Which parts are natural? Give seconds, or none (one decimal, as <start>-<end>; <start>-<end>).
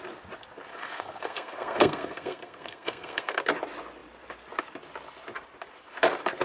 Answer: 0.0-0.7; 3.5-6.4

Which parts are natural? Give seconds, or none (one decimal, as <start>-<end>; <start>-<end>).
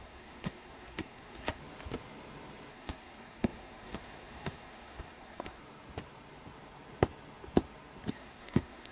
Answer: 1.6-2.7; 5.6-8.1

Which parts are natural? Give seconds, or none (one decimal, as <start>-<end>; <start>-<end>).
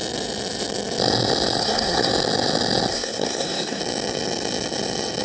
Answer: 0.0-1.6; 2.1-2.9; 3.8-5.2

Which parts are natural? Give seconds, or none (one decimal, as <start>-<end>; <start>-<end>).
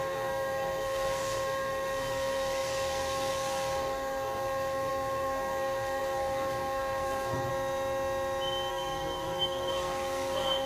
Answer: 7.5-8.7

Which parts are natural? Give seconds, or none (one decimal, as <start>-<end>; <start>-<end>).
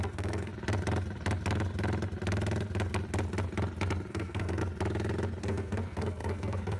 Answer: 0.5-4.1; 4.6-5.4